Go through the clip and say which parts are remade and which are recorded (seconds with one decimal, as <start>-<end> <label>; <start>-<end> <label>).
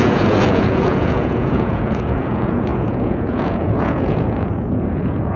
0.0-5.4 remade